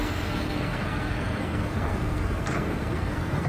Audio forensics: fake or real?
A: fake